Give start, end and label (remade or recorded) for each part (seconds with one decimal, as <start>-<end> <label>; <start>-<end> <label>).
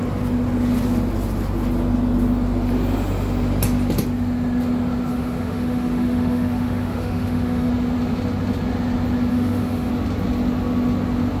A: 0.0-5.1 recorded; 5.1-7.7 remade; 7.7-9.3 recorded; 9.3-9.9 remade; 9.9-11.4 recorded